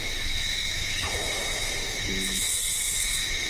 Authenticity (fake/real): fake